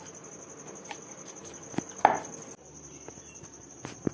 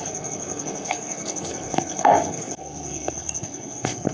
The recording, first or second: first